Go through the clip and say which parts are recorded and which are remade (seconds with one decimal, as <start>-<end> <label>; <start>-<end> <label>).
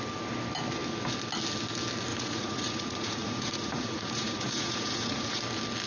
0.0-2.1 recorded; 2.1-5.4 remade; 5.4-5.9 recorded